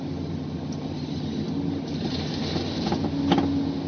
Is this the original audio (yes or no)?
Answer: yes